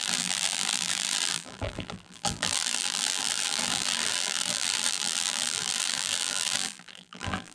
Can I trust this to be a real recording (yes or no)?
no